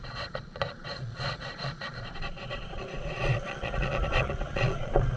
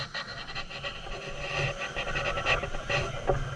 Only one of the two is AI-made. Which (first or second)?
first